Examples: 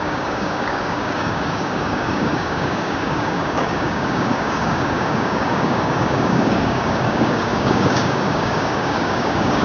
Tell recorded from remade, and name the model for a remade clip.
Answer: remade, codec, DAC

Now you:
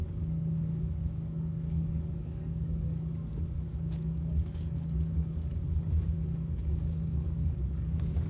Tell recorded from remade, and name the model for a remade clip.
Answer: remade, codec, DAC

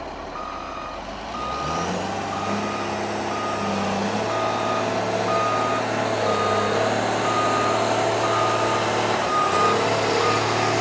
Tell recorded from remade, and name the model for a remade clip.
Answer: recorded